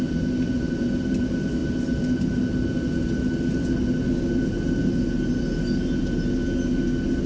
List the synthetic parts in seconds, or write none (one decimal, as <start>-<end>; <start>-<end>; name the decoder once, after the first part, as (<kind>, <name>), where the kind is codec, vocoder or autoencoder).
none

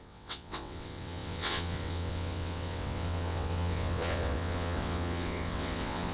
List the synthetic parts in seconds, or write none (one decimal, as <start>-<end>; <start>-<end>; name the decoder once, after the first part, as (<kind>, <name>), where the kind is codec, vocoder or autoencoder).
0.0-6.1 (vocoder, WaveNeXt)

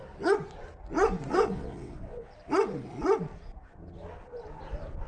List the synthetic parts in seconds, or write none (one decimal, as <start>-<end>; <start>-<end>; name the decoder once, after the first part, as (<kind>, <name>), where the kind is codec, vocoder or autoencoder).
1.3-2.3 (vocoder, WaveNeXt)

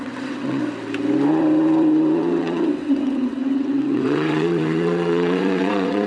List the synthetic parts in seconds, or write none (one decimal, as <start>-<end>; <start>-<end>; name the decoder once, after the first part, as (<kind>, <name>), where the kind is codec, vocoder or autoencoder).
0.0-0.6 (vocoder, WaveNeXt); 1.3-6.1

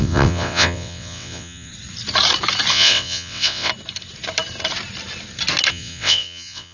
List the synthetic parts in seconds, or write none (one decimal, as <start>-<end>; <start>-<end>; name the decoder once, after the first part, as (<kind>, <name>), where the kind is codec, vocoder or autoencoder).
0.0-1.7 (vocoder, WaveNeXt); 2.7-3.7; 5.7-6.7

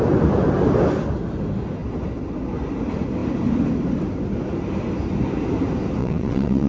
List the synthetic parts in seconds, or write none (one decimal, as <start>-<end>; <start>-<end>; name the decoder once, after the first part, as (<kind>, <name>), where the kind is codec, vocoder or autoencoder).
6.0-6.7 (vocoder, WaveNeXt)

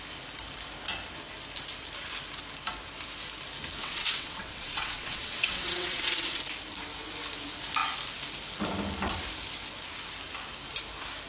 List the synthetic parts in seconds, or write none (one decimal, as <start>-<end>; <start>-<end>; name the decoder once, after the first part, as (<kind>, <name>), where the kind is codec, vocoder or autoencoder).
3.8-6.4 (vocoder, WaveNeXt)